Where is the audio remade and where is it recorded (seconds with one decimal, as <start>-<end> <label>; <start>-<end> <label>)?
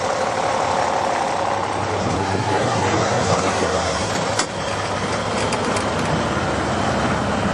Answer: 0.0-2.0 recorded; 2.0-4.1 remade; 4.1-7.5 recorded